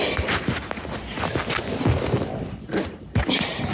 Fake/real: real